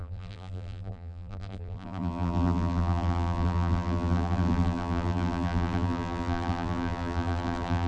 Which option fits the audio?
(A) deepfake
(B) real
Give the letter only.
A